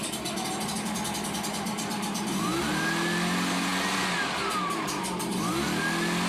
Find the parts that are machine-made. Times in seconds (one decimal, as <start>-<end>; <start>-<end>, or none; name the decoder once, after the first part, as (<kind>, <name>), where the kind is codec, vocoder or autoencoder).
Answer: none